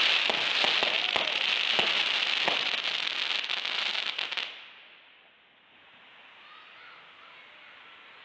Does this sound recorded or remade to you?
recorded